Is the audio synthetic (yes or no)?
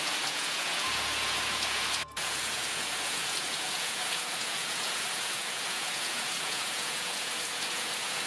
yes